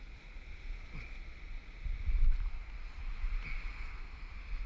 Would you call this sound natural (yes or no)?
yes